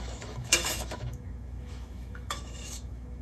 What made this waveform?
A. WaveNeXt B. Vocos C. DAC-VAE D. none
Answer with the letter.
C